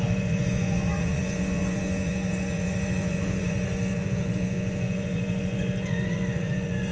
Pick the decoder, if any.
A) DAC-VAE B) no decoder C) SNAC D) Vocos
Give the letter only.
D